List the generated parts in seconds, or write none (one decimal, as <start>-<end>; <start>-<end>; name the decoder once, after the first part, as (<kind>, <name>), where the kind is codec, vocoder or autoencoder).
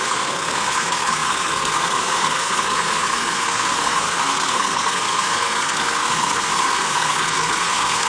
0.0-8.1 (codec, SNAC)